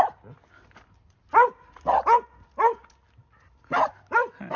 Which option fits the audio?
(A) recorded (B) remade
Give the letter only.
A